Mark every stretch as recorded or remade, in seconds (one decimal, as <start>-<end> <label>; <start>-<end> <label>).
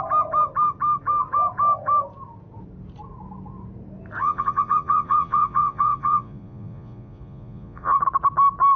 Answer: 0.0-4.2 recorded; 4.2-8.0 remade; 8.0-8.8 recorded